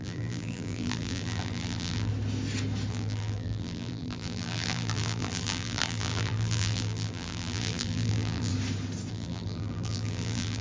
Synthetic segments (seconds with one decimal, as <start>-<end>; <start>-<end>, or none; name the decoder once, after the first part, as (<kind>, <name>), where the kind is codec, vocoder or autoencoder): 0.0-2.1 (vocoder, BigVGAN v2); 2.9-8.5; 9.1-10.6